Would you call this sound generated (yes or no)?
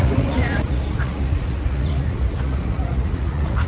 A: yes